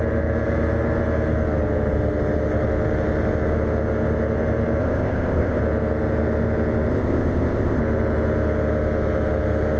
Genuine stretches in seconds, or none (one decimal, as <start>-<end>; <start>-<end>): 0.0-4.8; 5.6-6.9; 7.8-9.8